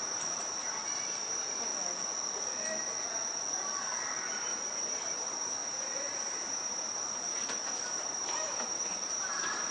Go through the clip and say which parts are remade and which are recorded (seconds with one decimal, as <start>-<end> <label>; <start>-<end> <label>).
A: 0.0-1.7 remade; 1.7-4.2 recorded; 4.2-9.7 remade

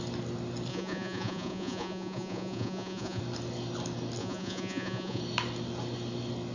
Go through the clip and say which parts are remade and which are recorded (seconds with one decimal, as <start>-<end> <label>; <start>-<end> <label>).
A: 0.0-0.7 recorded; 0.7-3.2 remade; 3.2-4.2 recorded; 4.2-5.2 remade; 5.2-6.5 recorded

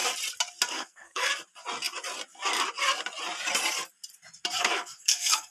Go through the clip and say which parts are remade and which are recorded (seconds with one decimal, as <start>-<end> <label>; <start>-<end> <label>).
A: 0.0-0.7 recorded; 0.7-1.3 remade; 1.3-4.6 recorded; 4.6-5.5 remade

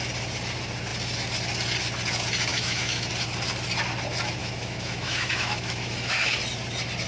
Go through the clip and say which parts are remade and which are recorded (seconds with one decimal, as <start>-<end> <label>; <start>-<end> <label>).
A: 0.0-2.5 recorded; 2.5-3.1 remade; 3.1-4.4 recorded; 4.4-6.4 remade; 6.4-7.1 recorded

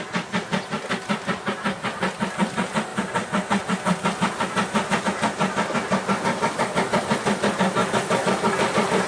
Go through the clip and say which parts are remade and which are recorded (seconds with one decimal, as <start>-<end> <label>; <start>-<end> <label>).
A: 0.0-9.1 recorded

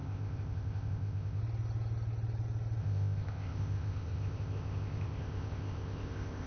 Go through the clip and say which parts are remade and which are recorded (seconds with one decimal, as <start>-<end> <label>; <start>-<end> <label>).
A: 0.0-1.4 remade; 1.4-2.8 recorded; 2.8-6.5 remade

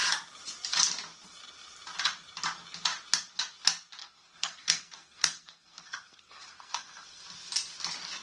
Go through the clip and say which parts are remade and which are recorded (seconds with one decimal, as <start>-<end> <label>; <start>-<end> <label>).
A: 0.0-4.0 recorded; 4.0-7.2 remade; 7.2-8.2 recorded

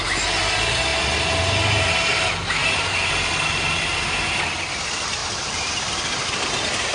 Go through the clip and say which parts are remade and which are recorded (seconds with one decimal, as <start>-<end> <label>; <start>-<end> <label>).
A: 0.0-2.6 recorded; 2.6-4.6 remade; 4.6-5.2 recorded; 5.2-5.9 remade; 5.9-6.9 recorded